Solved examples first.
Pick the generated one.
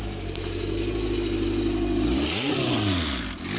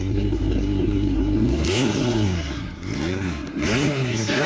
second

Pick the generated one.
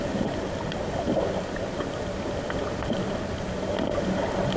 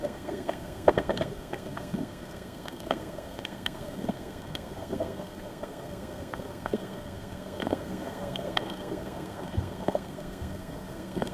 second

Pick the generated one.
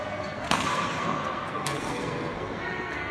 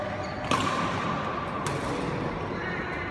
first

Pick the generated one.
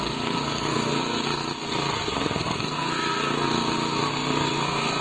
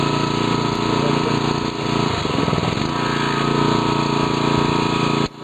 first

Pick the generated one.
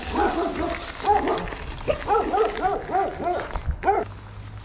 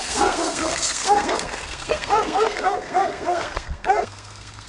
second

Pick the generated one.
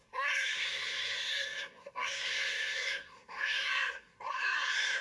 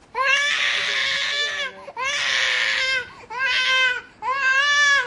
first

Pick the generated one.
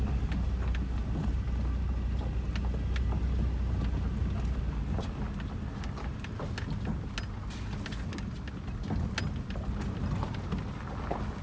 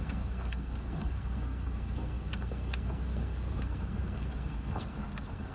second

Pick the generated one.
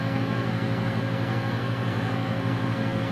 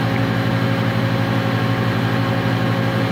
first